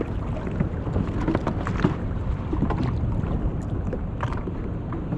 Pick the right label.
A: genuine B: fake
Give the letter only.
A